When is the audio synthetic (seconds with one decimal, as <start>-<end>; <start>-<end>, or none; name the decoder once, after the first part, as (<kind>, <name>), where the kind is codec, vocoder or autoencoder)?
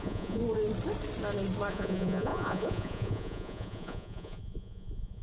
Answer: 0.0-0.4 (vocoder, Vocos); 1.7-5.2